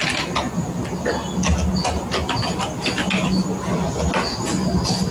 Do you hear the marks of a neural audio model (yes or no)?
no